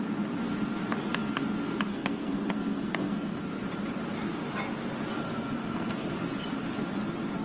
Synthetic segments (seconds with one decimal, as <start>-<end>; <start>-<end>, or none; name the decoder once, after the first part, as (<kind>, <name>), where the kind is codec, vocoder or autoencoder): 1.9-3.4 (codec, SNAC); 5.2-6.1